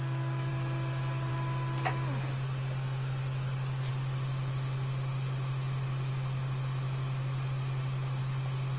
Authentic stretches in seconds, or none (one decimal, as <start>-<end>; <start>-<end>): 0.0-8.8